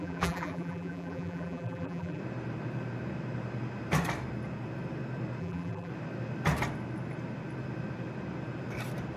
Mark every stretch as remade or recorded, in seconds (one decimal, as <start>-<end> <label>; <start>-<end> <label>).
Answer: 0.0-2.2 remade; 2.2-5.4 recorded; 5.4-5.9 remade; 5.9-9.2 recorded